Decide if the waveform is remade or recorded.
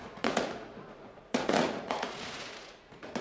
remade